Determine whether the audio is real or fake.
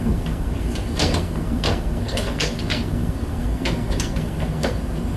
fake